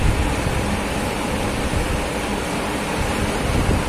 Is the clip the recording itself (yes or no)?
yes